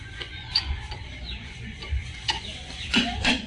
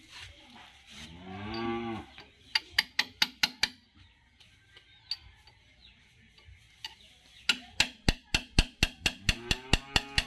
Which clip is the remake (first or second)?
first